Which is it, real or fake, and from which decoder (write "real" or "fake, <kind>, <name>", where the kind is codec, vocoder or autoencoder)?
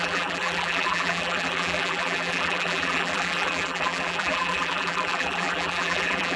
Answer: fake, vocoder, BigVGAN v2